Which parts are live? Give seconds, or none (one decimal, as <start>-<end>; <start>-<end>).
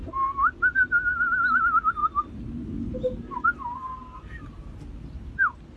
0.0-5.8